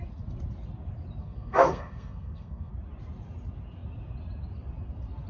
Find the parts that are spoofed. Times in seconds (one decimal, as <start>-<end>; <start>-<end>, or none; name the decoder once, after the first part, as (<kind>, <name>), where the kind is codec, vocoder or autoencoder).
1.2-2.7 (codec, SNAC)